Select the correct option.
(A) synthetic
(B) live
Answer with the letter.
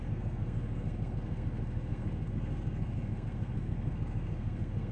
A